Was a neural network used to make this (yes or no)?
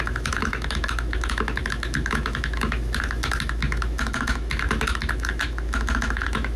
yes